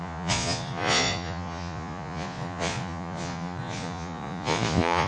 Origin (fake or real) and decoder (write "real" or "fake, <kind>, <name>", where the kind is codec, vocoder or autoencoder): fake, vocoder, Vocos